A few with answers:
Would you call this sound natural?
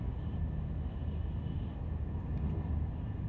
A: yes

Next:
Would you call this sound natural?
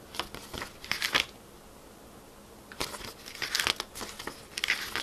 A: yes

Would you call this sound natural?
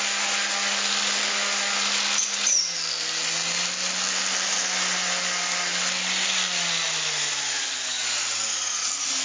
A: yes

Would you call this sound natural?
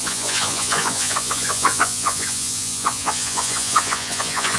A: no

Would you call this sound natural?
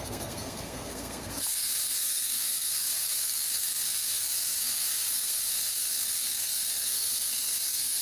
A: no